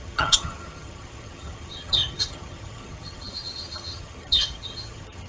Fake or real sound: fake